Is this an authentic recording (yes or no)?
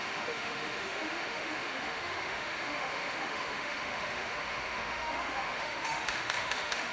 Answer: no